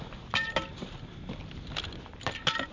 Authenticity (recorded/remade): recorded